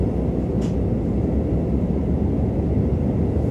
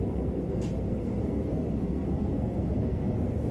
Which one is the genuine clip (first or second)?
first